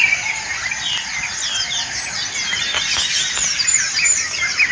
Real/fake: real